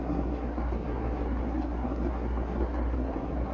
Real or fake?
fake